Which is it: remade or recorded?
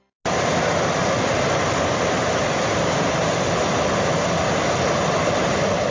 recorded